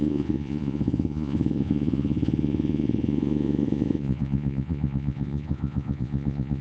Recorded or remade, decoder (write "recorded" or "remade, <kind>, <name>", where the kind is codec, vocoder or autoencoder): remade, vocoder, Vocos